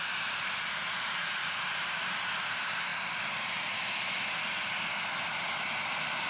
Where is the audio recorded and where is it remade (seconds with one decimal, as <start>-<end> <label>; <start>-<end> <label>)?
0.0-1.4 remade; 1.4-1.9 recorded; 1.9-2.9 remade; 2.9-5.7 recorded; 5.7-6.3 remade